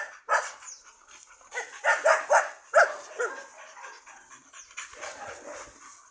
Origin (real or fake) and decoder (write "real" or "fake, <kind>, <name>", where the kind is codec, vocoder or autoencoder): real